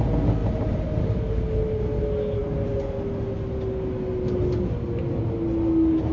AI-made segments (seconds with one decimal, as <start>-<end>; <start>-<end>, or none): none